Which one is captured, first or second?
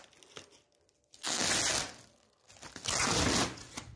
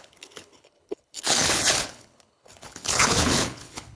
first